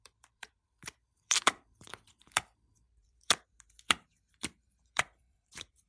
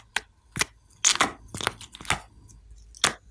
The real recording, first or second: second